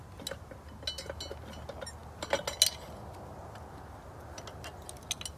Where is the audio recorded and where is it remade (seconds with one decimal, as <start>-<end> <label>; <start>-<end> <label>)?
0.0-5.4 recorded